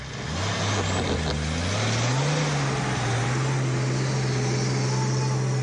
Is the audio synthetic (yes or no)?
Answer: no